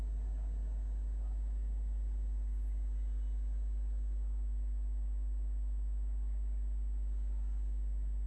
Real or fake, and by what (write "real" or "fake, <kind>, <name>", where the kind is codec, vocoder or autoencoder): real